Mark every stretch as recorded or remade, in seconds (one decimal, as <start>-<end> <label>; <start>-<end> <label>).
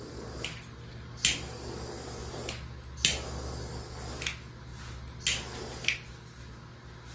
0.0-7.1 recorded